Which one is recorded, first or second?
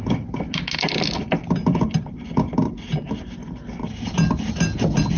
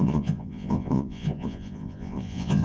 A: first